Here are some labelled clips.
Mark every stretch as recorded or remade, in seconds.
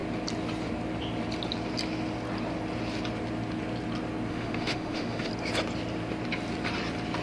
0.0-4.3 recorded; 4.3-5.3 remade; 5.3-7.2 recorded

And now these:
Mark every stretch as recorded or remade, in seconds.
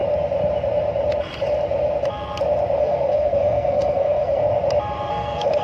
0.0-2.8 recorded; 2.8-4.4 remade; 4.4-5.1 recorded; 5.1-5.6 remade